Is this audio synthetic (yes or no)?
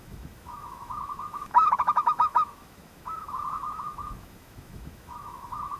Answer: yes